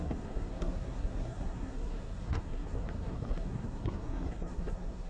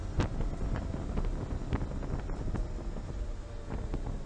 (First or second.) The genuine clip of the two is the second